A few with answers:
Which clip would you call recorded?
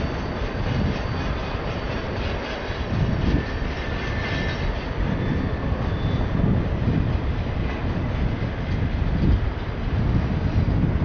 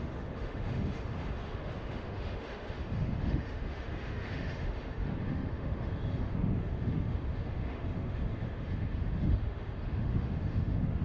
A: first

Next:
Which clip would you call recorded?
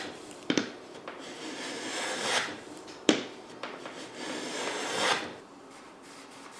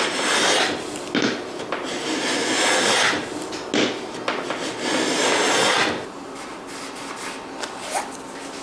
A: second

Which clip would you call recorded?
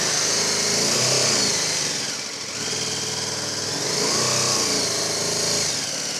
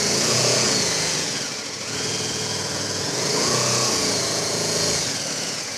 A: first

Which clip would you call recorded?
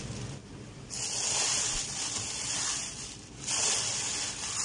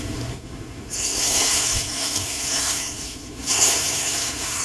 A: first